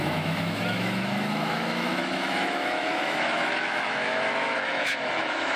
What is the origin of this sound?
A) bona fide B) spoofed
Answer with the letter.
B